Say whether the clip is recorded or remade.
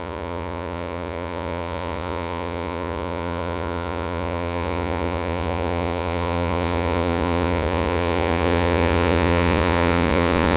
remade